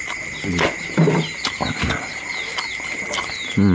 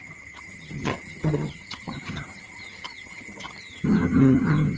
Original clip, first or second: first